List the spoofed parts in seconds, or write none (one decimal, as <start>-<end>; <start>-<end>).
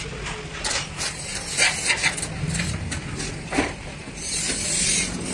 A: none